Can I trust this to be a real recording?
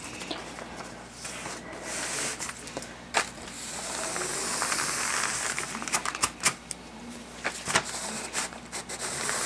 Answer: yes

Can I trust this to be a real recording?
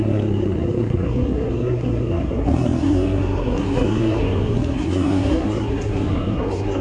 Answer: no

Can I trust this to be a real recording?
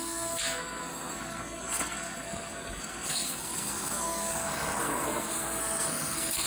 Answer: no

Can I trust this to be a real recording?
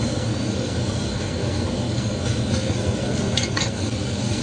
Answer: no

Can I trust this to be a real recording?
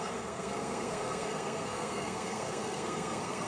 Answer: no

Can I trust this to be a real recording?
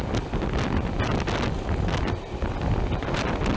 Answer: yes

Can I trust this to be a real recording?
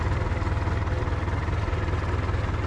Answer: yes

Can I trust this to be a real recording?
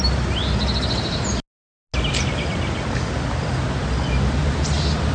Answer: yes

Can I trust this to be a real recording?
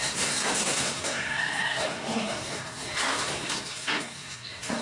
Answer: no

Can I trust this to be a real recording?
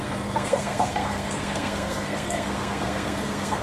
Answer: no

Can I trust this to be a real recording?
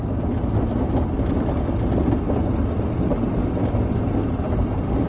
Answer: yes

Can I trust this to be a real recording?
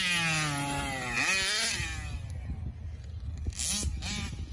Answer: yes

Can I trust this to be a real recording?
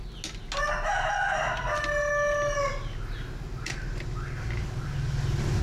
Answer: yes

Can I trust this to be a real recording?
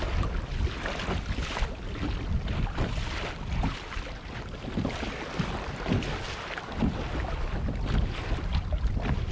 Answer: yes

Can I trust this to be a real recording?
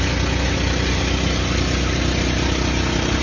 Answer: yes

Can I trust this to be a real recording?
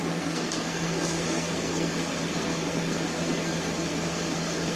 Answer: no